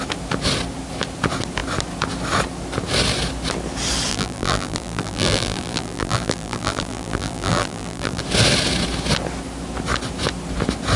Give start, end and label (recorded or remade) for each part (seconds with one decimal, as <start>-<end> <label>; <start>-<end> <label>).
0.0-4.1 recorded; 4.1-8.2 remade; 8.2-11.0 recorded